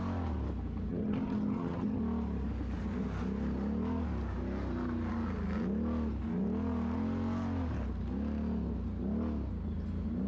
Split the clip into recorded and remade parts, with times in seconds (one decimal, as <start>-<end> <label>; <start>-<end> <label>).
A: 0.0-0.9 recorded; 0.9-2.0 remade; 2.0-10.3 recorded